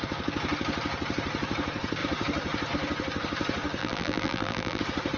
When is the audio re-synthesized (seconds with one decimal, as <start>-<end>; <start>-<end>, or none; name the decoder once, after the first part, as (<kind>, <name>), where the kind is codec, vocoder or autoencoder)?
3.8-4.8 (vocoder, BigVGAN v2)

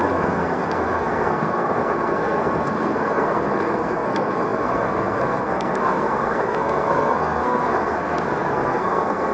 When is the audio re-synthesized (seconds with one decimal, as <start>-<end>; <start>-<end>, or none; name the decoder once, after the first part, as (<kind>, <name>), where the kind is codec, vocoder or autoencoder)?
0.0-9.3 (codec, SNAC)

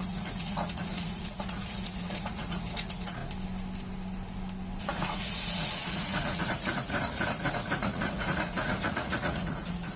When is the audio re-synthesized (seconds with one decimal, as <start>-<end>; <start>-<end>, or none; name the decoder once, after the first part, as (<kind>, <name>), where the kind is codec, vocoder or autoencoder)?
0.0-3.2 (vocoder, Vocos); 4.8-10.0

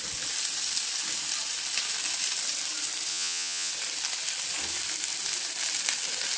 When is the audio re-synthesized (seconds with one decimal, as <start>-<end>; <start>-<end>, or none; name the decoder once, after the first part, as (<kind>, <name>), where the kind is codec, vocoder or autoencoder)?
3.1-3.7 (vocoder, Vocos)

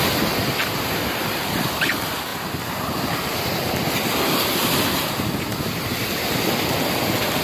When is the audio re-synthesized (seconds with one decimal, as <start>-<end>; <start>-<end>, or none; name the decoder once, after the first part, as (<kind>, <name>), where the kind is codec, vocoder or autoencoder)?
none

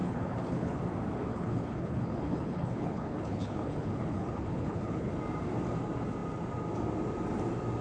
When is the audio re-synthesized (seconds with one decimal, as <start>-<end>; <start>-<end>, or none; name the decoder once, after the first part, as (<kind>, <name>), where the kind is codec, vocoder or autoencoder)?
0.0-0.8 (codec, HILCodec); 1.3-5.1